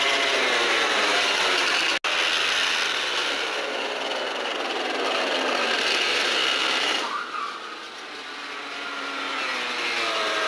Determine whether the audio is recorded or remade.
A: recorded